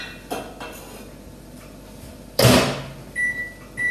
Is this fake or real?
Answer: real